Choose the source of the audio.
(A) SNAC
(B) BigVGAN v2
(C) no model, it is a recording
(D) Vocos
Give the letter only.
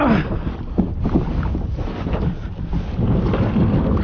C